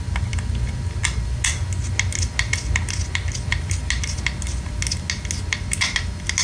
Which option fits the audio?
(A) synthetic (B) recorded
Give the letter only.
B